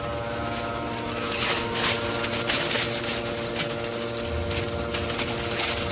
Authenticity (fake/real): real